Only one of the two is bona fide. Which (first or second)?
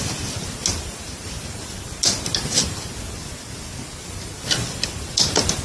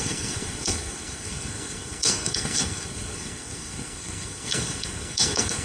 first